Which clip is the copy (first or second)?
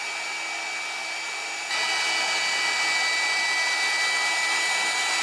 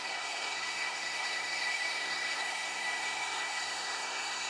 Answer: second